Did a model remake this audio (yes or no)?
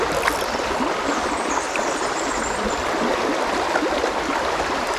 no